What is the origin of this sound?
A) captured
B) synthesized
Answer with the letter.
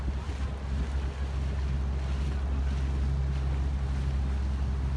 A